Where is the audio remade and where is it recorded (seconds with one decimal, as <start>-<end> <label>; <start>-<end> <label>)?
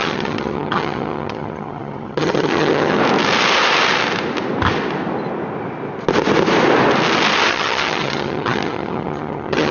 0.0-3.0 remade; 3.0-7.5 recorded; 7.5-9.7 remade